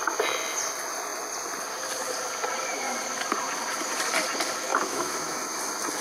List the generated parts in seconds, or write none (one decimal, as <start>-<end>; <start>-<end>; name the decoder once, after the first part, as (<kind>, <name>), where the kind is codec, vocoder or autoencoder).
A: 4.7-5.4 (autoencoder, DAC-VAE)